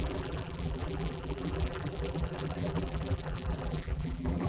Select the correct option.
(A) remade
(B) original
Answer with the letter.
A